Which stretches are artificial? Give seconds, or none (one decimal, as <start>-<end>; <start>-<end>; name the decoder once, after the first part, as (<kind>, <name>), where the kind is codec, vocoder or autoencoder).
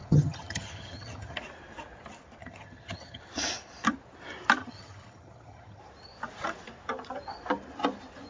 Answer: 0.0-1.4 (vocoder, HiFi-GAN); 2.4-3.2; 4.6-5.8